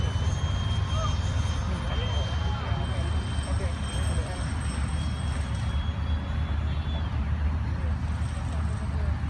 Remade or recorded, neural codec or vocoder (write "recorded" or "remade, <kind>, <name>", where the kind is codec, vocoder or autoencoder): recorded